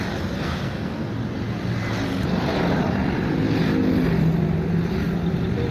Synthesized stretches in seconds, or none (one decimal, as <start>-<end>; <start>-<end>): 0.4-1.1